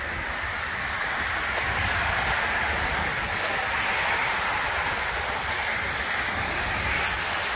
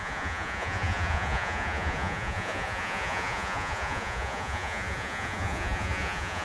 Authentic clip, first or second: first